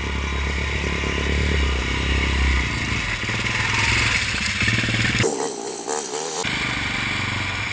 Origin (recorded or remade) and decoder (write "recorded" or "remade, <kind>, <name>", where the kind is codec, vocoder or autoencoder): recorded